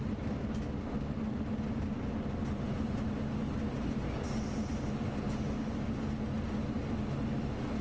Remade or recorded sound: recorded